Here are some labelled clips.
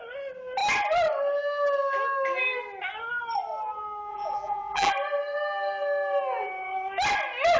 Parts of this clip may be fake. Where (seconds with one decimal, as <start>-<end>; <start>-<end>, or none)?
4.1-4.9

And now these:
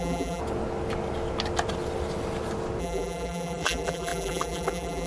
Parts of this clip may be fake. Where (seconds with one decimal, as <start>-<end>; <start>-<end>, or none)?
0.0-0.4; 2.8-5.1

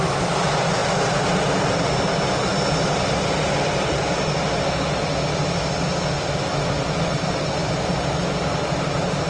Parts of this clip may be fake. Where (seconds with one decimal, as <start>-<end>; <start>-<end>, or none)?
none

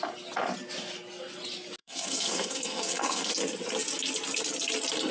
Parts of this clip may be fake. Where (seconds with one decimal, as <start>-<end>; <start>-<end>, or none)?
1.8-3.3

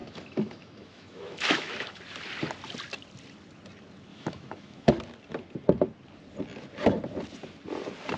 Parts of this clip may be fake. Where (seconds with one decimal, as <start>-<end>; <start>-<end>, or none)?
0.0-2.0; 4.1-4.9

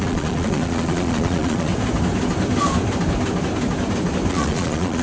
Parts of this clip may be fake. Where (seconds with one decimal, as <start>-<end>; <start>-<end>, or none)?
0.0-1.7; 4.3-5.0

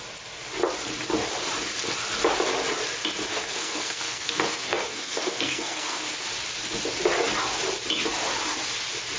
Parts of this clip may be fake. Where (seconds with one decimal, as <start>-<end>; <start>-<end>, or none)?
3.3-6.0